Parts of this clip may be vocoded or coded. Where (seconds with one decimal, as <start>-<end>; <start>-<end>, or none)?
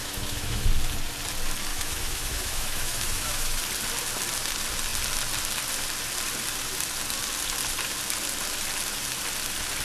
0.0-0.7; 1.7-3.6